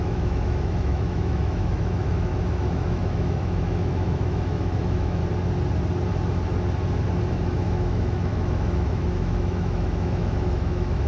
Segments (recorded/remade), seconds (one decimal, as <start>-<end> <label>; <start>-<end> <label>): 0.0-5.2 remade; 5.2-7.3 recorded; 7.3-11.1 remade